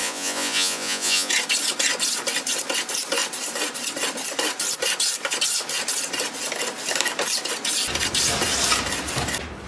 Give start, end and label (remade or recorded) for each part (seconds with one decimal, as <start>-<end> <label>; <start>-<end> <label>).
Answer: 0.0-1.3 remade; 1.3-9.7 recorded